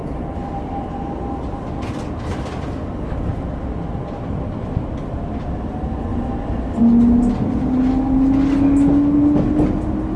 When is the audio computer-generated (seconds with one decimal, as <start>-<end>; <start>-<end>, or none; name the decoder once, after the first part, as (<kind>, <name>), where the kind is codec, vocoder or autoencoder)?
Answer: none